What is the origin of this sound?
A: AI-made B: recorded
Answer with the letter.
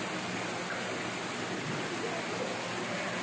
B